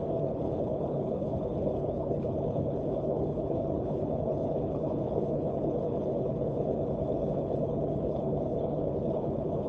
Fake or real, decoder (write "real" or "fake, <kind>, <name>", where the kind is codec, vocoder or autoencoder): fake, codec, HILCodec